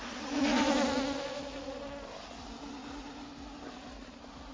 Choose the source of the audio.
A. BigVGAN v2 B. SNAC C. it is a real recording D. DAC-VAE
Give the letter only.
C